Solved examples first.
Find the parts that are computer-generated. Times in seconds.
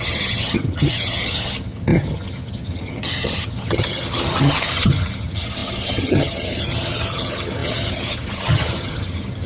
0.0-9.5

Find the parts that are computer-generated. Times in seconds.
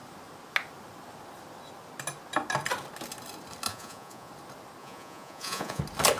3.7-4.3; 4.8-5.8